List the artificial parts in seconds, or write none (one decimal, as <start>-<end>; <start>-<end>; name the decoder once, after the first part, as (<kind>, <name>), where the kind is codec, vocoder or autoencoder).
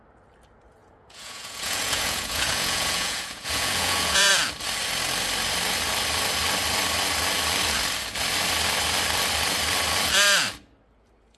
0.8-4.3 (vocoder, Vocos)